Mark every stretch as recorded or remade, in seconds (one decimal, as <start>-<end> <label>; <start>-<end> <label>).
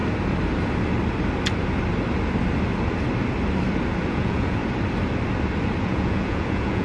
0.0-4.1 recorded; 4.1-4.6 remade; 4.6-5.8 recorded; 5.8-6.8 remade